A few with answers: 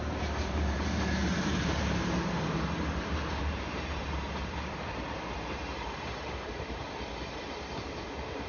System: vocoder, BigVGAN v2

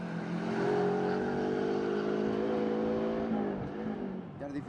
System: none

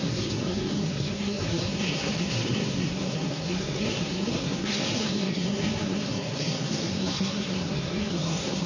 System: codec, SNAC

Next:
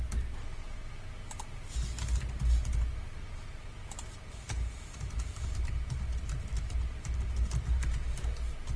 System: none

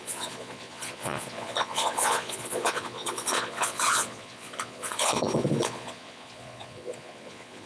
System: vocoder, Vocos